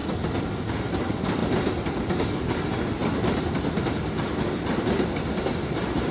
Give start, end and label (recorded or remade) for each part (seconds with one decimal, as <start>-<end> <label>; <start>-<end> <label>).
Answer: 0.0-6.1 recorded